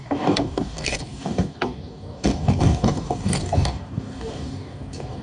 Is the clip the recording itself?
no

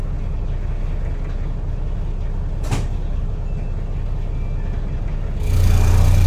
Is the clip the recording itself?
yes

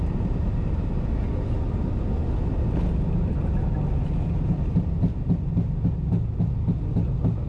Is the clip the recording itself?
yes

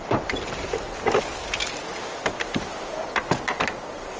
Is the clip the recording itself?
yes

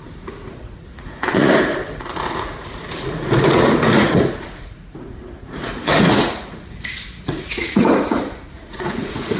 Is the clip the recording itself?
no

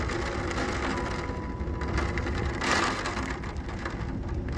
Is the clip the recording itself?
yes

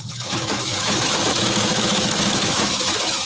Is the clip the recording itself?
no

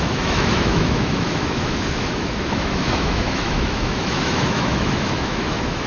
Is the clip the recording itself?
no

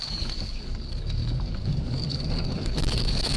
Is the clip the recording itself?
no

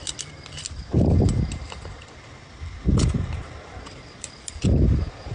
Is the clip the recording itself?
no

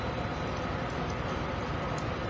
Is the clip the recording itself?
yes